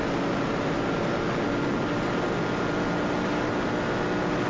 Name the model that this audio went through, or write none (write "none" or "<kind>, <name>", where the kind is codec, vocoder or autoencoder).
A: none